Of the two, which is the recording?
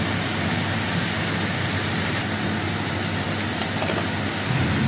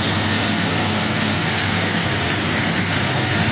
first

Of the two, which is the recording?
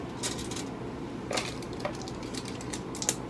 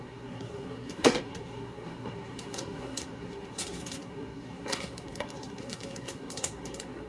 first